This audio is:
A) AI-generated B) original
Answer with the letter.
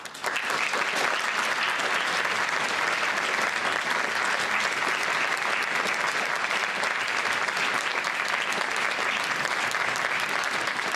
B